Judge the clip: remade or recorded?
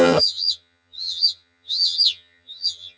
remade